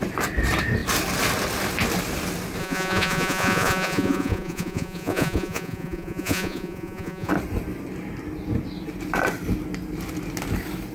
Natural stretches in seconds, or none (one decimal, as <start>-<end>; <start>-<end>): 0.0-2.6; 7.3-10.9